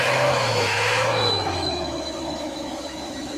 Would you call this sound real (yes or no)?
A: no